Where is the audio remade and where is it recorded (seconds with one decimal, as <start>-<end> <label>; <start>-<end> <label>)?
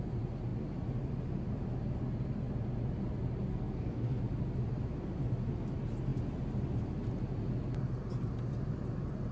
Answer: 0.0-3.5 recorded; 3.5-4.2 remade; 4.2-9.3 recorded